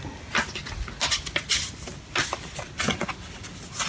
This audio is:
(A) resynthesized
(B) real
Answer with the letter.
B